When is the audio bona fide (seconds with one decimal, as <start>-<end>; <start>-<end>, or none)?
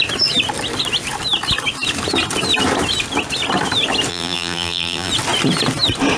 0.0-4.1; 5.1-6.2